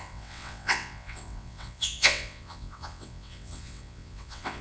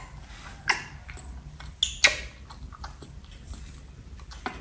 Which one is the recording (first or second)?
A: second